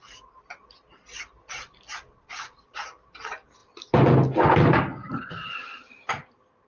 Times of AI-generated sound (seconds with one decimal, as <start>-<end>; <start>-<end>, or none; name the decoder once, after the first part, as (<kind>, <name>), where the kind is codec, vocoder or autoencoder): none

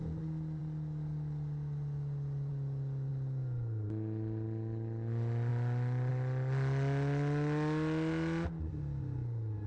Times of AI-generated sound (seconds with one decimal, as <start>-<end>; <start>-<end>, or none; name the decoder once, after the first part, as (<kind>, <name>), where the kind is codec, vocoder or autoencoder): none